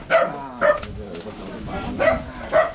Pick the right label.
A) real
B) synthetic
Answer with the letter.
A